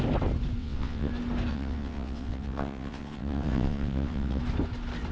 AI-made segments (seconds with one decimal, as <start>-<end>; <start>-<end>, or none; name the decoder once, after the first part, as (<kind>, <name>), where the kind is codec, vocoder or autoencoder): 0.6-1.1 (vocoder, WaveNeXt); 1.5-4.4